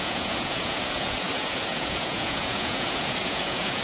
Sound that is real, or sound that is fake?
fake